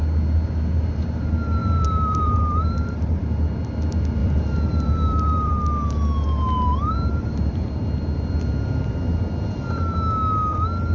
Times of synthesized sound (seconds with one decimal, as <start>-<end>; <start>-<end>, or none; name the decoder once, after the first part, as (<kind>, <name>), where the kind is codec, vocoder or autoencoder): 1.6-3.0 (vocoder, BigVGAN v2); 4.2-5.5; 6.8-7.7